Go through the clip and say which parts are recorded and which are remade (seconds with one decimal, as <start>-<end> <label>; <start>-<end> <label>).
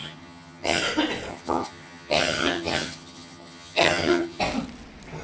0.0-0.8 remade; 0.8-1.3 recorded; 1.3-4.4 remade; 4.4-5.2 recorded